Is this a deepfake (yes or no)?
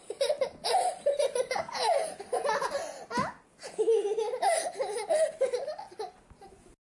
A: no